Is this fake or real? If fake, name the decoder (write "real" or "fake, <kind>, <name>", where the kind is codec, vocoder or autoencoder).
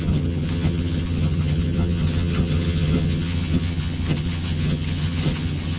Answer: fake, vocoder, HiFi-GAN